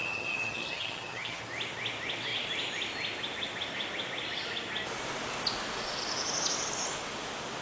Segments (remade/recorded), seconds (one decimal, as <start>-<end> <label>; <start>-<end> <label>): 0.0-1.4 remade; 1.4-7.6 recorded